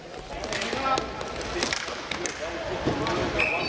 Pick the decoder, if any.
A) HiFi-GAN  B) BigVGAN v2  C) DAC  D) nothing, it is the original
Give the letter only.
D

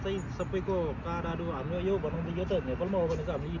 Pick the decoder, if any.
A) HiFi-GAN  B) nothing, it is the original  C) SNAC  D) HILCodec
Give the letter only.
B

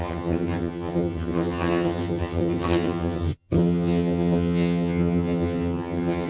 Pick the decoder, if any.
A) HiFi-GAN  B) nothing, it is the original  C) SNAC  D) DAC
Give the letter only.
A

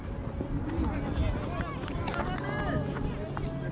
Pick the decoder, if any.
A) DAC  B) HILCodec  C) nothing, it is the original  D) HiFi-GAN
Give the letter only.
C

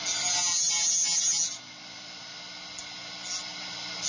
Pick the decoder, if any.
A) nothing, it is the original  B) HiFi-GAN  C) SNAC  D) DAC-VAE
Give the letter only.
A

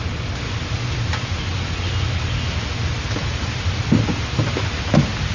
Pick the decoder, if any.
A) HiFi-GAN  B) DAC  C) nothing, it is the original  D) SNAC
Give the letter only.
C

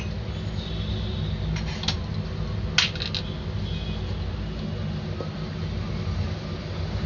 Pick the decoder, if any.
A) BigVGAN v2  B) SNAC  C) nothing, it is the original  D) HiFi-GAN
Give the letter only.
C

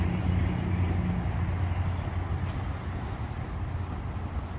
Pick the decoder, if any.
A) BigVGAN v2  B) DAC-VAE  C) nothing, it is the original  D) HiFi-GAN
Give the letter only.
C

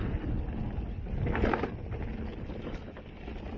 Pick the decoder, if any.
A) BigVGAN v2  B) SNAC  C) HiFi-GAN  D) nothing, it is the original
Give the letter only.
D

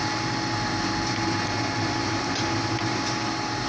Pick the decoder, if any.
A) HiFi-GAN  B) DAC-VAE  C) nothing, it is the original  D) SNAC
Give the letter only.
C